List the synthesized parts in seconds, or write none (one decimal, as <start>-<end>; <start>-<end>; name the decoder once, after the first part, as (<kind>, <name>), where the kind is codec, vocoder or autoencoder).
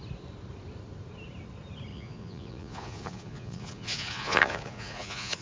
1.9-5.4 (vocoder, Vocos)